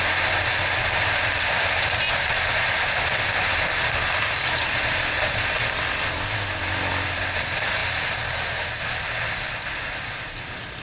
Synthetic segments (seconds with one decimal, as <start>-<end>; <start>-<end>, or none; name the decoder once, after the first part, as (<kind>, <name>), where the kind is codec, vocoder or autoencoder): none